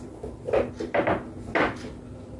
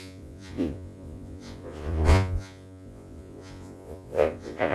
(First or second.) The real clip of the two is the first